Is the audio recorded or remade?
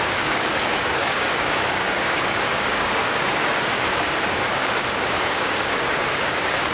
remade